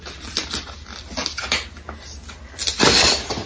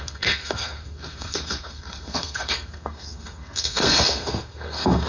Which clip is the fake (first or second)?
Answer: second